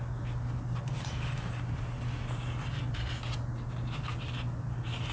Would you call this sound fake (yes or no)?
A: no